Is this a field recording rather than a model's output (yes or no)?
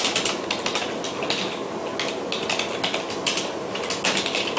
yes